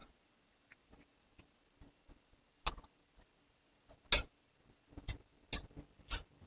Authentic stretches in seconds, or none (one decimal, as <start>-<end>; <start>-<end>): 0.0-6.5